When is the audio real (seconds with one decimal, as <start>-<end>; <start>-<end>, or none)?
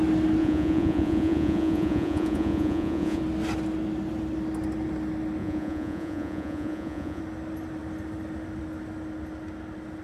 0.0-0.4; 3.2-5.4; 7.2-10.0